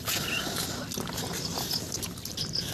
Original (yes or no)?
yes